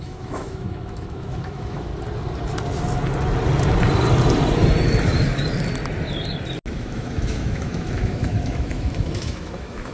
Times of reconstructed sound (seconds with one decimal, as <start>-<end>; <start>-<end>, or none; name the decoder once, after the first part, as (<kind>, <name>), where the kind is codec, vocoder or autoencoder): 0.0-1.9 (autoencoder, DAC-VAE); 6.7-9.9